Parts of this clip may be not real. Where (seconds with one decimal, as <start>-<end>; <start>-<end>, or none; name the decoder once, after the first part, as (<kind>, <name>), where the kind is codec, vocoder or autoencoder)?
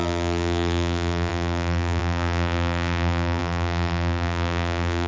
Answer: 0.0-5.1 (vocoder, BigVGAN v2)